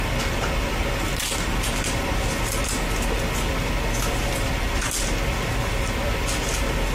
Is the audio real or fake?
real